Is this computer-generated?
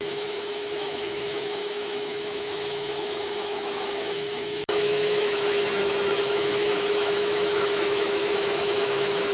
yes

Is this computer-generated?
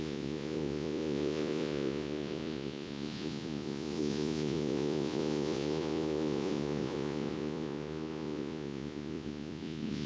yes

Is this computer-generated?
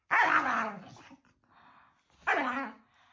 no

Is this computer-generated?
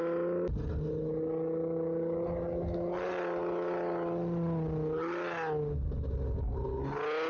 no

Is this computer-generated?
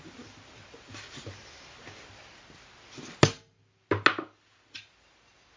no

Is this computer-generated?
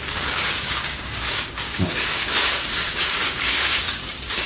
yes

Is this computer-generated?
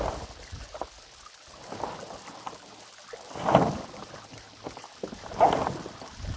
no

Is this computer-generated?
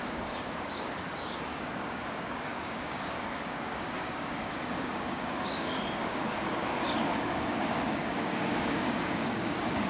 yes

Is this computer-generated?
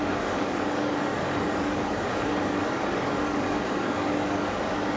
yes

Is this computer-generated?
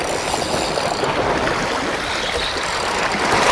no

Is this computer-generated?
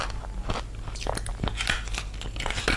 no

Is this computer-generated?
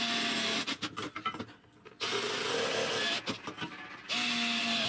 no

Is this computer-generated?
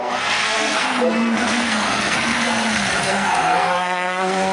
yes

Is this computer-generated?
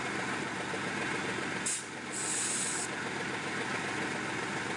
no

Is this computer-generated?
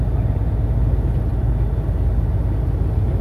no